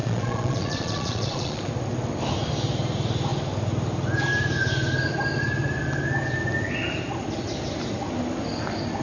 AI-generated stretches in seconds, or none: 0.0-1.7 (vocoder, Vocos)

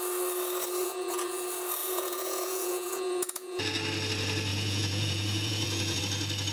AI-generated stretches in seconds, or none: 0.8-1.4 (vocoder, Vocos); 1.8-3.6; 4.5-6.0

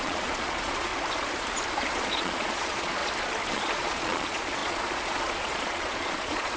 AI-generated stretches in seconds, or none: 0.0-0.9 (vocoder, Vocos); 1.9-3.0; 3.5-6.6

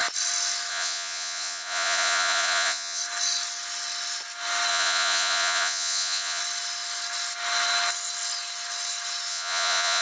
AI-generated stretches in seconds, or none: 0.7-3.0 (vocoder, Vocos); 4.7-6.4; 9.3-10.0